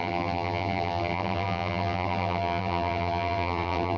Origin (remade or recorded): remade